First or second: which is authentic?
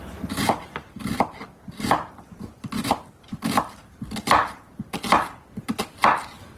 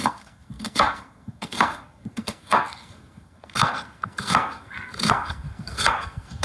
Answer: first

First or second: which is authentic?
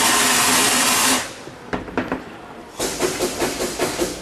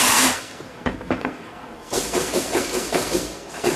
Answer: first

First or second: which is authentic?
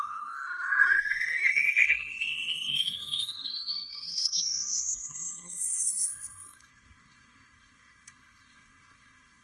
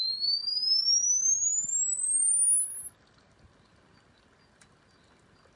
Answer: second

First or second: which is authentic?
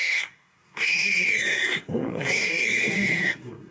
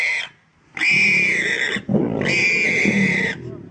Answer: second